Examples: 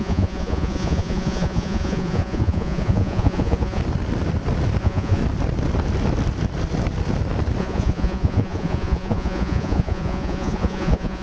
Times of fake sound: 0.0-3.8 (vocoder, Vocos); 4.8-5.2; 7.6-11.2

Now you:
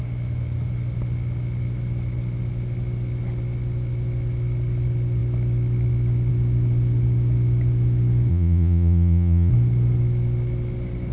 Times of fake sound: 8.3-9.5 (vocoder, Vocos)